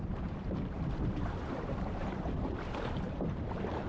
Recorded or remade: remade